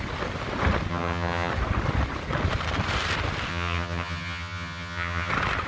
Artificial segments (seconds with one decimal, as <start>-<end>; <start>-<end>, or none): 0.9-1.5; 3.5-5.3